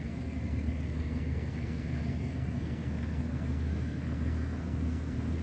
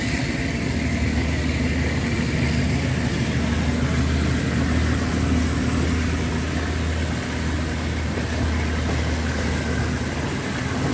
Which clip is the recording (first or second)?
second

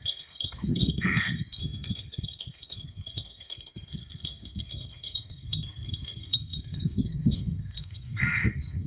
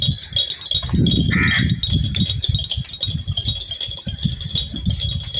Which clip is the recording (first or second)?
second